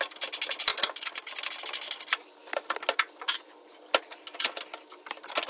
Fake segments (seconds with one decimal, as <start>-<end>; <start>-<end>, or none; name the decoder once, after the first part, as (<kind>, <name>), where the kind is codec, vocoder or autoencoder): none